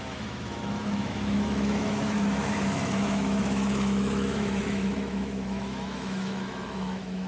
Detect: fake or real fake